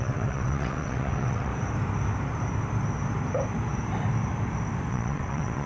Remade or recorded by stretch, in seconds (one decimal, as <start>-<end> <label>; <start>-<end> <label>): 0.0-1.5 remade; 1.5-4.9 recorded; 4.9-5.7 remade